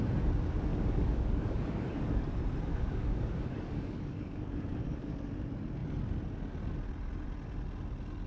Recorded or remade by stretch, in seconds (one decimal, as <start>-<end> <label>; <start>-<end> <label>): 0.0-0.7 recorded; 0.7-2.3 remade; 2.3-2.7 recorded; 2.7-5.3 remade; 5.3-8.3 recorded